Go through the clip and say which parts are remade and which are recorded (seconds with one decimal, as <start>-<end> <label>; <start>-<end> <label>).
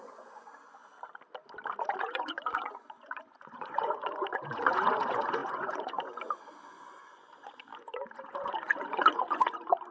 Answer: 0.0-0.8 remade; 0.8-2.0 recorded; 2.0-9.9 remade